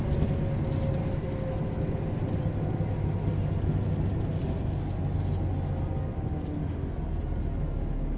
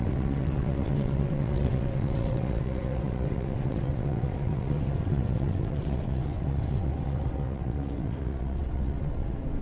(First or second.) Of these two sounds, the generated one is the second